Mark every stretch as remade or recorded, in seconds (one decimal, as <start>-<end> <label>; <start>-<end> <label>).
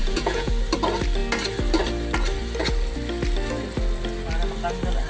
0.0-0.5 remade; 0.5-5.1 recorded